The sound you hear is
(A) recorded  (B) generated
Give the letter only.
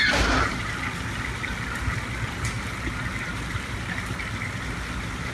A